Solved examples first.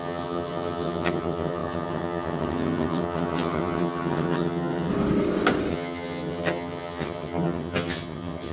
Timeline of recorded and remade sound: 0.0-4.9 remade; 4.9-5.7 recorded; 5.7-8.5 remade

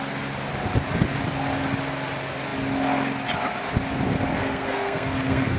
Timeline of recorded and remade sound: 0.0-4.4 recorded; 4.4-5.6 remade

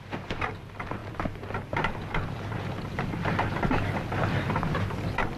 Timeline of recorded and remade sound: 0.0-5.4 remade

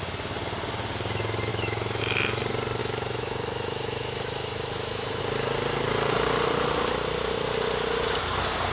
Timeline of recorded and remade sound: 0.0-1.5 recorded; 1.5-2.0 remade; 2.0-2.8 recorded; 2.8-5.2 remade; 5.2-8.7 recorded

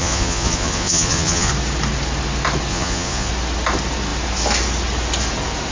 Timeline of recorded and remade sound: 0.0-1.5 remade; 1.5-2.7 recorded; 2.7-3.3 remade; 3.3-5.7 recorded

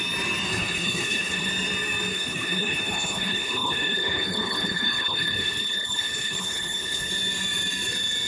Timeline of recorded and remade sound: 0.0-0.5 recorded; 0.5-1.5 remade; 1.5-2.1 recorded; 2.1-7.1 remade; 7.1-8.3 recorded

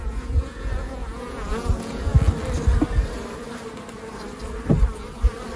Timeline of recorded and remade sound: 0.0-2.1 remade; 2.1-5.6 recorded

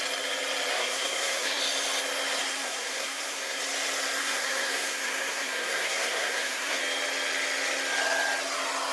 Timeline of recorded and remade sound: 0.0-0.7 recorded; 0.7-1.6 remade; 1.6-2.4 recorded; 2.4-3.6 remade; 3.6-4.2 recorded; 4.2-6.8 remade; 6.8-8.9 recorded